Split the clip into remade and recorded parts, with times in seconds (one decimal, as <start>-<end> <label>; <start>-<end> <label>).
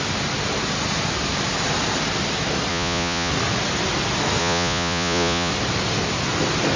0.0-2.7 recorded; 2.7-3.3 remade; 3.3-4.4 recorded; 4.4-5.5 remade; 5.5-6.8 recorded